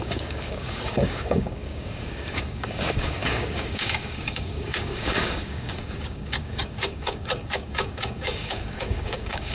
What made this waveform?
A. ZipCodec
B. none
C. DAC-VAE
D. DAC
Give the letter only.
D